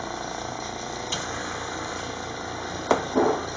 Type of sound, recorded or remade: recorded